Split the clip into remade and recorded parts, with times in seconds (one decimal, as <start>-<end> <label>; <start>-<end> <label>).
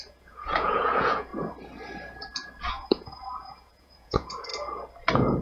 0.0-1.3 remade; 1.3-2.7 recorded; 2.7-4.5 remade; 4.5-5.4 recorded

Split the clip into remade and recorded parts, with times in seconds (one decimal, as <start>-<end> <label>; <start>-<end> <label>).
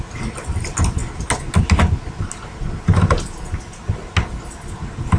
0.0-5.2 recorded